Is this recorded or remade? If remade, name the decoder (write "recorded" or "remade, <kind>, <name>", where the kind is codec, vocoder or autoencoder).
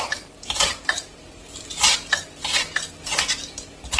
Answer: recorded